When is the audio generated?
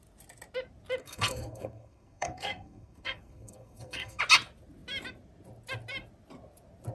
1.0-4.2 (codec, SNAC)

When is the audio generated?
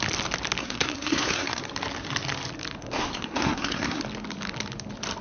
0.6-1.6 (codec, SNAC); 2.8-4.0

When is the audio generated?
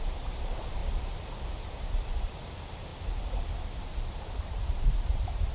0.0-0.8 (vocoder, BigVGAN v2); 1.5-2.9; 3.8-5.5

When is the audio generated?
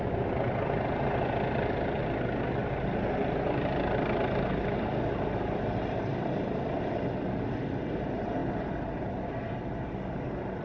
none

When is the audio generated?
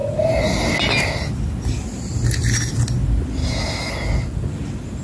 3.4-3.9 (autoencoder, DAC-VAE)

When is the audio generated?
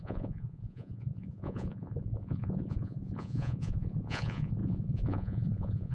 0.0-5.9 (vocoder, Vocos)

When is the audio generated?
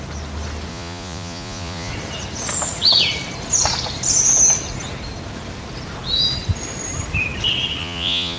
0.7-1.9 (vocoder, Vocos); 7.8-8.4